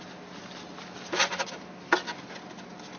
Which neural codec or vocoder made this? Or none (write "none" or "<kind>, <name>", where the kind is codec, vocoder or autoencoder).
none